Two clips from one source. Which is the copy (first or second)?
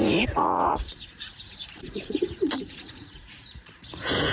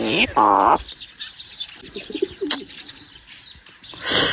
first